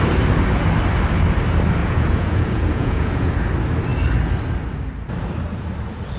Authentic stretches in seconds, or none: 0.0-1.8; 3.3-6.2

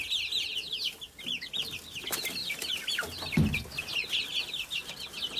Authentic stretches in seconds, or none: 0.0-5.4

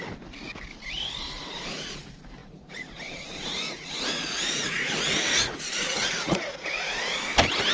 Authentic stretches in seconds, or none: 0.0-1.4; 2.0-2.4; 6.8-7.7